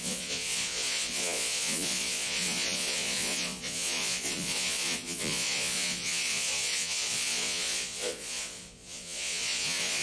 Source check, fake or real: fake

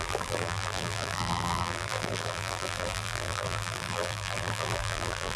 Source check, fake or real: fake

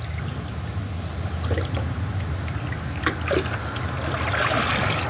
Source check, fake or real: real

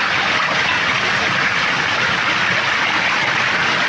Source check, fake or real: real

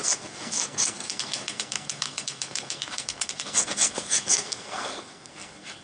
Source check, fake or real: fake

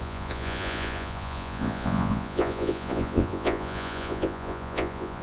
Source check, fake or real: fake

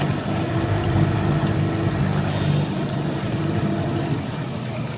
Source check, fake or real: real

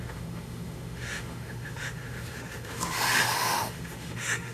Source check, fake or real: fake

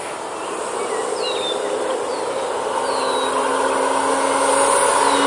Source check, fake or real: real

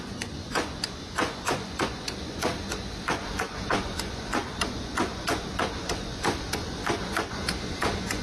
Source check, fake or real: fake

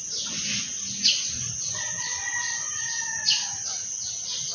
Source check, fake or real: real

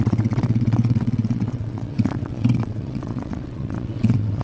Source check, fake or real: fake